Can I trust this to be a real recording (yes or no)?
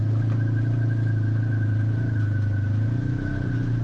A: yes